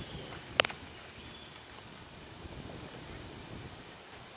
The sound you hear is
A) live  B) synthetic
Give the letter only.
A